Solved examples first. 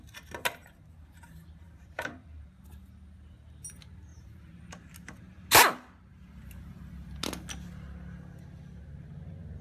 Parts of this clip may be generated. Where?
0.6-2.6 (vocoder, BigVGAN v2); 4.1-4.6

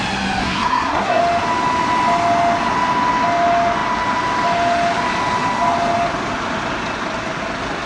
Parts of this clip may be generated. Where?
0.4-1.2 (codec, SNAC)

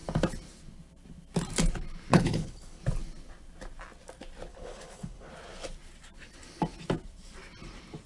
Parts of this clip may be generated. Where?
2.1-2.8 (codec, HILCodec); 4.5-5.3

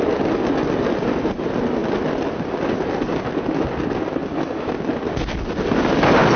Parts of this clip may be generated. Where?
none

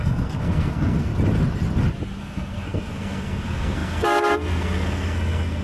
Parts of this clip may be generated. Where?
0.0-1.1 (codec, SNAC); 2.2-5.6

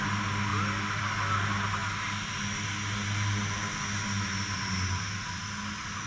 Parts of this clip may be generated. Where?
none